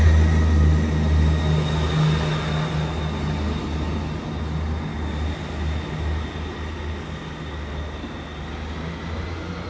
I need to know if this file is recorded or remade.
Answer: recorded